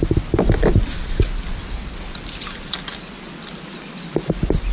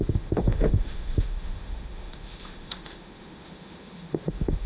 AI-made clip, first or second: second